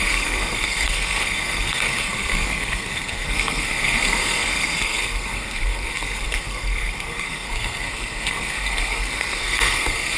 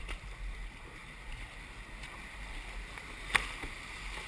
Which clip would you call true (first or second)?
second